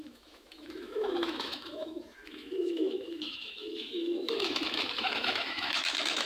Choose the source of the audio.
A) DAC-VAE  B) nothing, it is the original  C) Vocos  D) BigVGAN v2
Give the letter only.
A